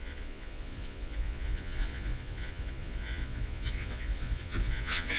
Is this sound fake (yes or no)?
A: yes